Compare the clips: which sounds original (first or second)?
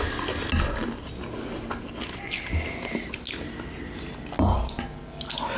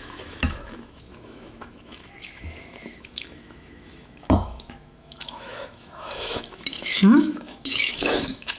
first